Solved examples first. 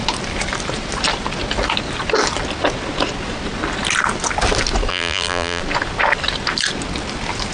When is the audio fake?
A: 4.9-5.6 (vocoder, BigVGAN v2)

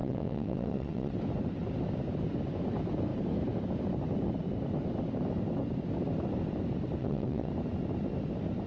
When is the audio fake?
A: 0.0-1.1 (vocoder, WaveNeXt); 7.0-7.5

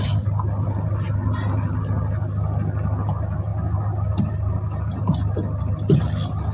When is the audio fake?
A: none

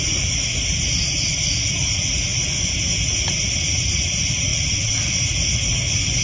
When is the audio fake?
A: 4.5-5.0 (vocoder, WaveNeXt)

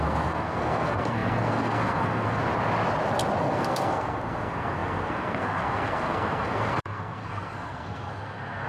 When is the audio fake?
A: 0.0-2.4 (codec, SNAC); 3.4-8.7

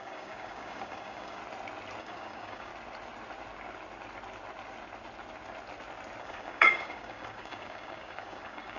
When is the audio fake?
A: 0.0-1.4 (codec, DAC); 2.0-2.7; 6.2-8.8

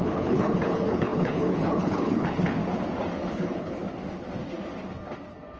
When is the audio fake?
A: 0.0-2.6 (codec, HILCodec); 3.3-3.8